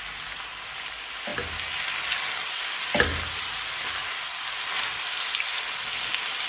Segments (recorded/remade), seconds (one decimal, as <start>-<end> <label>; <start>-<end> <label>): 0.0-6.5 recorded